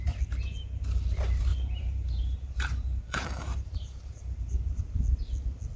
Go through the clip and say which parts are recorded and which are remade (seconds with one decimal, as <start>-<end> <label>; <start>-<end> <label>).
0.0-1.5 recorded; 1.5-4.8 remade; 4.8-5.8 recorded